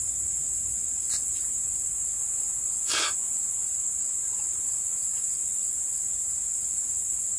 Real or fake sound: real